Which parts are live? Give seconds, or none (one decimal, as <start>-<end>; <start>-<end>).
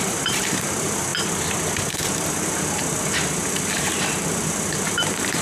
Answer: 1.1-1.9